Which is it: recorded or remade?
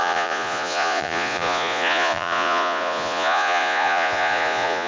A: remade